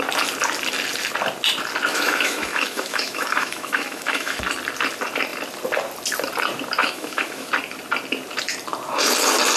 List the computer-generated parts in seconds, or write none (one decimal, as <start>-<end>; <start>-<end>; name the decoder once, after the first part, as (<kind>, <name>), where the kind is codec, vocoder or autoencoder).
1.9-4.4 (autoencoder, DAC-VAE); 6.8-7.5

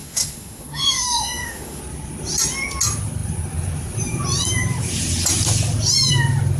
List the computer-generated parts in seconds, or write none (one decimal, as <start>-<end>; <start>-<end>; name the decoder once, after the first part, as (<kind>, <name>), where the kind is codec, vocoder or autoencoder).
0.0-1.8 (autoencoder, DAC-VAE)

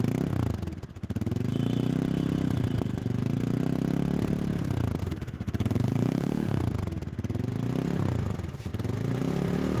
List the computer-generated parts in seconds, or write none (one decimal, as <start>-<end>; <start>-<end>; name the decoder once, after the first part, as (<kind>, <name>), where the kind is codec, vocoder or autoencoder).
5.0-6.6 (autoencoder, DAC-VAE)

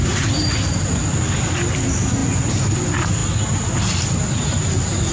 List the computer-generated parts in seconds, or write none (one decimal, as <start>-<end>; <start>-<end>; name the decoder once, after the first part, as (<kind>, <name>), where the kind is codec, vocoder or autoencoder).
none

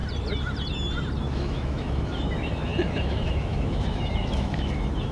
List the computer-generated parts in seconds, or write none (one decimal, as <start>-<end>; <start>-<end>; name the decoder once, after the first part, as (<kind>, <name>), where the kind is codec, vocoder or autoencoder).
1.2-5.1 (autoencoder, DAC-VAE)

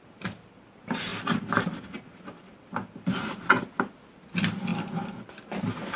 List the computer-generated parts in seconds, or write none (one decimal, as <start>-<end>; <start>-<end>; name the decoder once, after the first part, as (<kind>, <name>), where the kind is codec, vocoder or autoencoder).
none